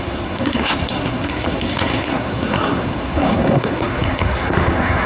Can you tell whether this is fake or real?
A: fake